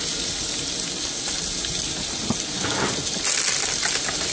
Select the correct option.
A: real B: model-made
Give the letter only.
A